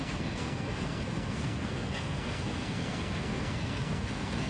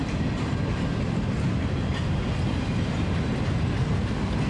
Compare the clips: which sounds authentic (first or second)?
second